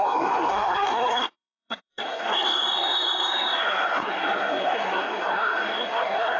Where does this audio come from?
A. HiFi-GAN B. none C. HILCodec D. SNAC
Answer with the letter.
D